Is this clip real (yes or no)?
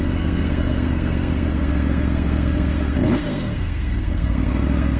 no